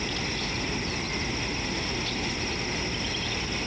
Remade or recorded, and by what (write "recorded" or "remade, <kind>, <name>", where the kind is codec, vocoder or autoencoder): recorded